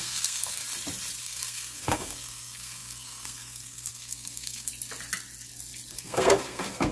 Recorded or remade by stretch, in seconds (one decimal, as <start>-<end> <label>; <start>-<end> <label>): 0.0-0.6 remade; 0.6-1.2 recorded; 1.2-4.7 remade; 4.7-5.9 recorded; 5.9-6.9 remade